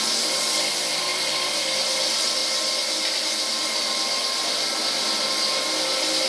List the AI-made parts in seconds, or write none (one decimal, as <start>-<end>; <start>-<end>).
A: none